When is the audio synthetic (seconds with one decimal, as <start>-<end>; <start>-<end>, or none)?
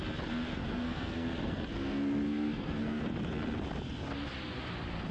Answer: 0.5-3.0